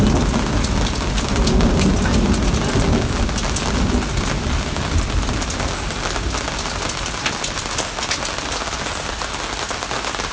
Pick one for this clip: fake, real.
real